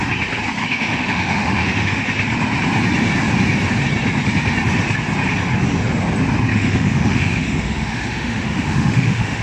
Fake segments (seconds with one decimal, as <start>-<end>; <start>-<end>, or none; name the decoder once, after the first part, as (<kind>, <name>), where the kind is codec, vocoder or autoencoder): 0.6-2.0 (autoencoder, DAC-VAE); 6.5-9.4